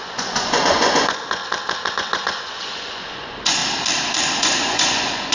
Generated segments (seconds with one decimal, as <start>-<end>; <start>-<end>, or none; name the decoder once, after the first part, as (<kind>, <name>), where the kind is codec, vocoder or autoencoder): 0.0-1.4 (vocoder, Vocos); 1.9-3.6; 4.4-5.3